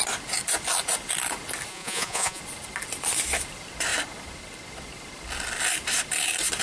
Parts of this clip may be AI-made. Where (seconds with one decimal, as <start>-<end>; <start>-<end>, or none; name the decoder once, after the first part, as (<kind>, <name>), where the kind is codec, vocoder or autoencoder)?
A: 1.7-2.4 (vocoder, Vocos)